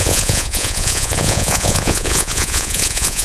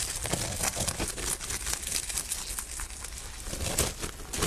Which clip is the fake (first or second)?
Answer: first